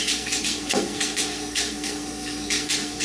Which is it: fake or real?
fake